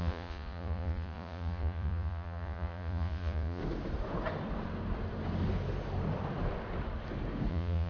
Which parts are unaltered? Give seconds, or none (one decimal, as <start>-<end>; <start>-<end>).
3.6-7.5